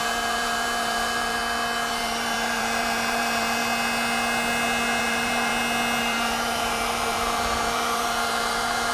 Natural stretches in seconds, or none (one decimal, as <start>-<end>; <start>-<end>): 1.4-1.9; 3.6-5.0; 5.5-6.0